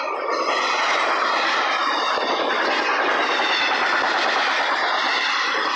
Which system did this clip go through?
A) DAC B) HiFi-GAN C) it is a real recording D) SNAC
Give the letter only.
C